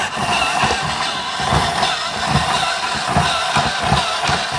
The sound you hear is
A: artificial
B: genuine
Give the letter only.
B